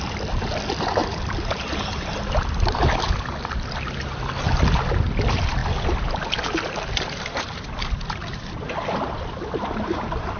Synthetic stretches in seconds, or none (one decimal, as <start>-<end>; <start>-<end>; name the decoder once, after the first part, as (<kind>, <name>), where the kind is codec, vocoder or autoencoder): none